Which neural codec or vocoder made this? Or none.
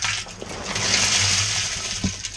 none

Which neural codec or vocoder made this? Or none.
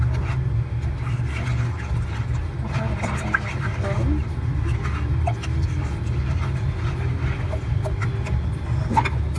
none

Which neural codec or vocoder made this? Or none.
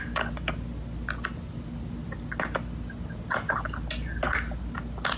none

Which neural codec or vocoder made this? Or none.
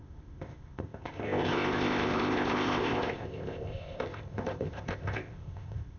codec, ZipCodec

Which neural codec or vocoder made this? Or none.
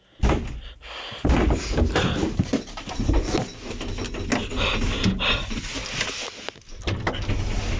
none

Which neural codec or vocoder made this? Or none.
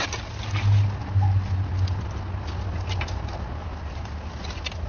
none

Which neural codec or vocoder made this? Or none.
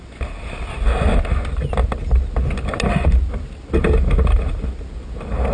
none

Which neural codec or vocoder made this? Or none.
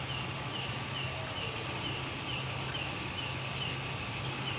vocoder, BigVGAN v2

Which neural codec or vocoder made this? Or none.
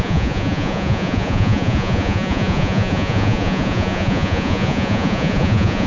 vocoder, Vocos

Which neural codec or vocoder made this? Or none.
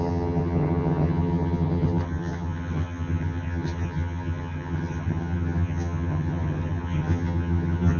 vocoder, HiFi-GAN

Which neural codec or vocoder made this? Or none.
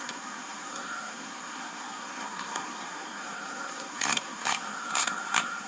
codec, SNAC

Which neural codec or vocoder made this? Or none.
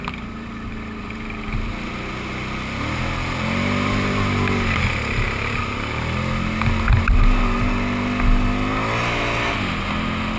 none